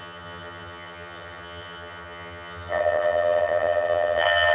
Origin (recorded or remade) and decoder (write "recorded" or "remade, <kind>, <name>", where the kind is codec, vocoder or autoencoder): remade, vocoder, HiFi-GAN